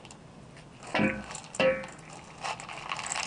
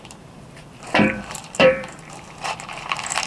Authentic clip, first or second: first